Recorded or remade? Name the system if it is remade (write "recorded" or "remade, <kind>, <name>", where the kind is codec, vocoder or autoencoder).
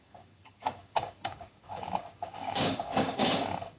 remade, codec, DAC